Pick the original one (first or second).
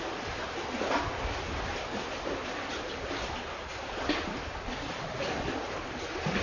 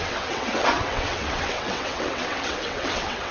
first